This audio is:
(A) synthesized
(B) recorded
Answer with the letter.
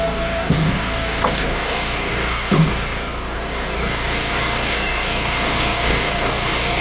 A